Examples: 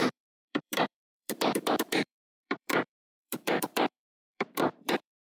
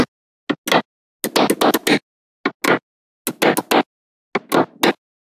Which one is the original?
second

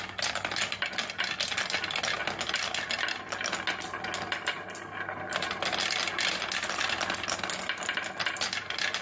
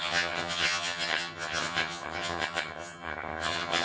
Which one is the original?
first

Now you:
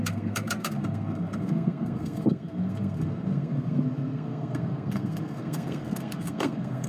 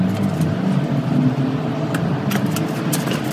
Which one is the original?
second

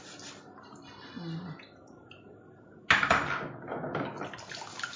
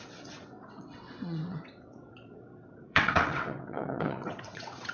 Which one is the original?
first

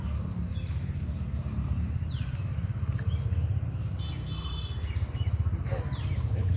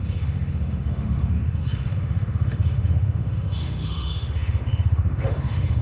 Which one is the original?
first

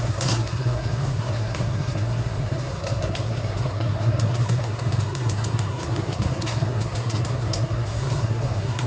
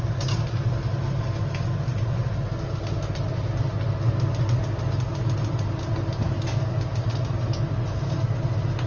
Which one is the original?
second